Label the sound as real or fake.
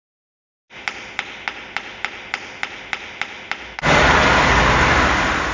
real